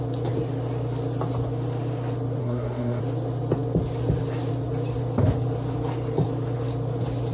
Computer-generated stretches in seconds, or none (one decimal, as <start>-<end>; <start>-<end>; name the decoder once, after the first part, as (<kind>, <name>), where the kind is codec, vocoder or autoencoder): 2.4-3.0 (codec, SNAC)